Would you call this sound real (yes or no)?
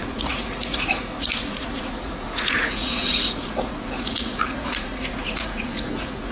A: no